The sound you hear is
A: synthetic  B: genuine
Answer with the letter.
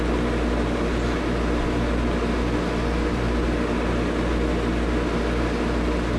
B